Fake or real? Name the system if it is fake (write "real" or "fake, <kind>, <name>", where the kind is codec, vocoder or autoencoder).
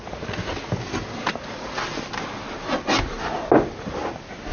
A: real